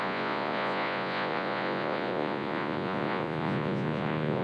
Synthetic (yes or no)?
yes